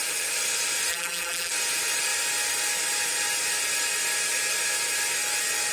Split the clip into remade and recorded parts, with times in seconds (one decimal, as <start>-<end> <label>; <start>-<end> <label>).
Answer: 0.0-0.9 recorded; 0.9-1.5 remade; 1.5-5.7 recorded